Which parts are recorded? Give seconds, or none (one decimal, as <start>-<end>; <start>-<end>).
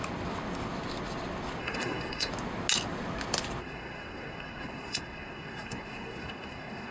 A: 0.0-1.6; 2.3-3.6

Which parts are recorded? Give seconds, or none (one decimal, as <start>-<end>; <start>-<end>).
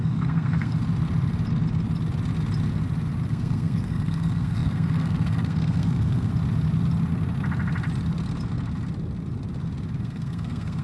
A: 0.8-3.3; 6.3-10.0